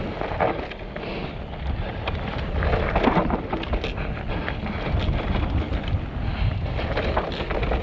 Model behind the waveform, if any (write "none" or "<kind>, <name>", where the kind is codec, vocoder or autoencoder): none